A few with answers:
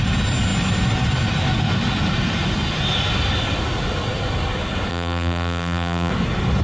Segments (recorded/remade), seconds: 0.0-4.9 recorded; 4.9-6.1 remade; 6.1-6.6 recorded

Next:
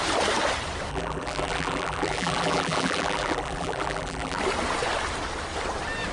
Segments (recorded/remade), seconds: 0.0-0.9 recorded; 0.9-4.4 remade; 4.4-6.1 recorded

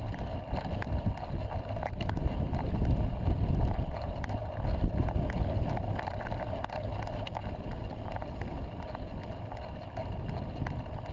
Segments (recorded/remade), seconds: 0.0-4.4 remade; 4.4-6.2 recorded; 6.2-11.1 remade